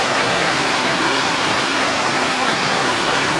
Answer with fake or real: fake